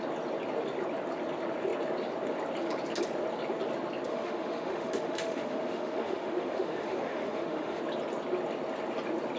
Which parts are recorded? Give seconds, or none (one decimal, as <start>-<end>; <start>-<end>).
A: 0.0-4.1; 7.8-9.4